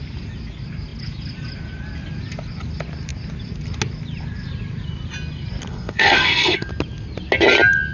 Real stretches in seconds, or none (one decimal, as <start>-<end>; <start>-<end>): 0.0-5.7; 6.7-7.9